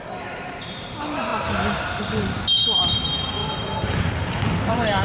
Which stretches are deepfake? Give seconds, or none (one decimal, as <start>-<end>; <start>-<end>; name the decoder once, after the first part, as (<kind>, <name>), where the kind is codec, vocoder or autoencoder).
0.0-1.3 (vocoder, BigVGAN v2); 2.0-3.4; 4.1-5.0